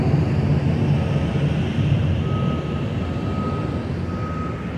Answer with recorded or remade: recorded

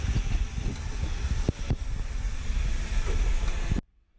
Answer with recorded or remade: recorded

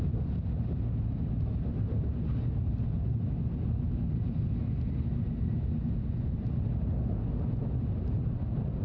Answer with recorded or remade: recorded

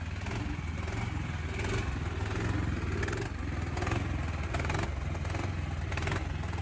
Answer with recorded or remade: recorded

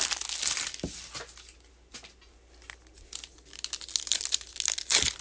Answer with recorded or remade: recorded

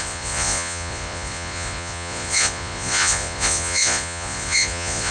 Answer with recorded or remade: remade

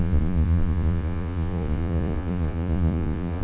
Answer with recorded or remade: remade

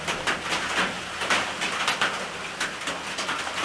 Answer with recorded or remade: recorded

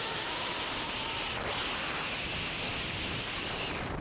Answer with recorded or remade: recorded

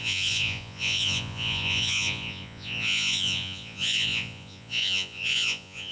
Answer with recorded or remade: remade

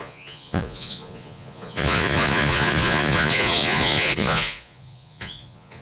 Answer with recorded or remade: remade